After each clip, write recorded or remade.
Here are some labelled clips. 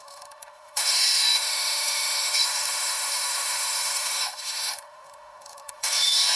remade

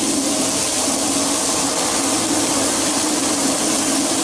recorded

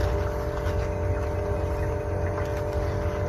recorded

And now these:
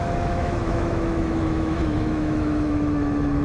remade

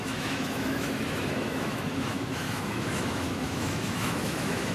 remade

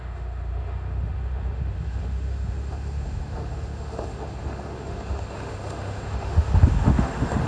remade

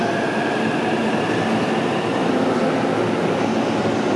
recorded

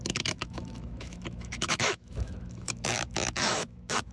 remade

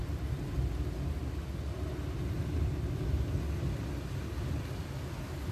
recorded